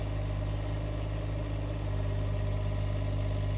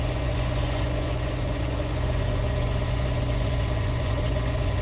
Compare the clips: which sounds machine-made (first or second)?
second